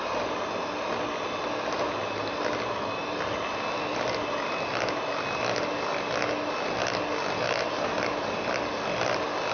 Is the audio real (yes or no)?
yes